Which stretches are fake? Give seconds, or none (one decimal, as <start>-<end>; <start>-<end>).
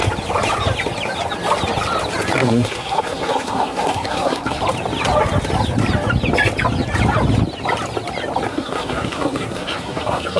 2.4-4.6; 8.5-10.4